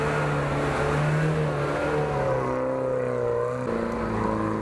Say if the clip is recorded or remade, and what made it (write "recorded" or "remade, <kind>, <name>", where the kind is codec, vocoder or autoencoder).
recorded